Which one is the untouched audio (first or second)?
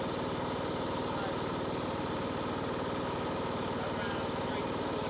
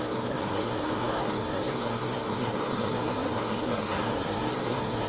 first